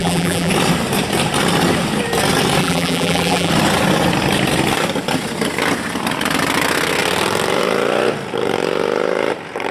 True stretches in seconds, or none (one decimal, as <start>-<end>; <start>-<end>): 0.5-2.6; 3.5-9.7